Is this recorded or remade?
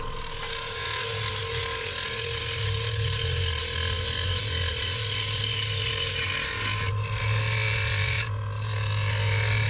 recorded